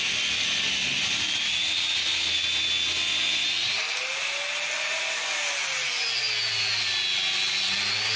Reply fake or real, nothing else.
real